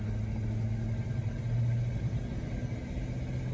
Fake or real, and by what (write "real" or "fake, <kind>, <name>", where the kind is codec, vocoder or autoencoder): real